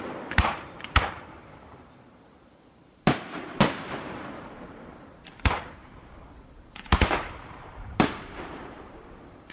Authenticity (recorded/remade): remade